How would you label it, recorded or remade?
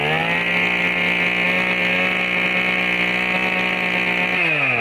recorded